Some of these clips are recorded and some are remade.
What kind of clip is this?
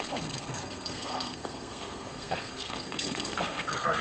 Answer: remade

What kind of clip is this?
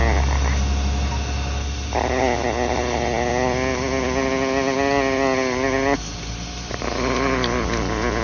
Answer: recorded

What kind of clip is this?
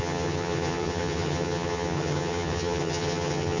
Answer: remade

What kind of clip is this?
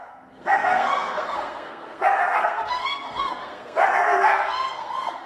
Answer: remade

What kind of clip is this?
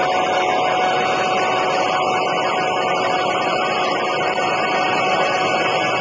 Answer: recorded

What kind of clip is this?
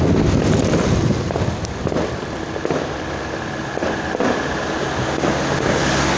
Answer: recorded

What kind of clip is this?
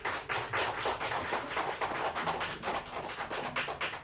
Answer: recorded